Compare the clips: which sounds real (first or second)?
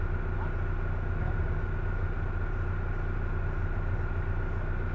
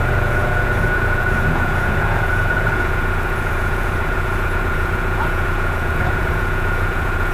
first